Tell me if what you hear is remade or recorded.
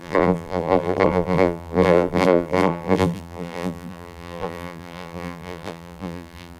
remade